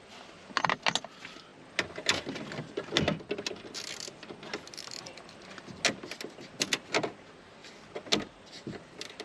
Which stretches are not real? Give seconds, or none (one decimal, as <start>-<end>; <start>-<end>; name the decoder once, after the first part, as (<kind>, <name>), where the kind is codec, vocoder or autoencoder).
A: none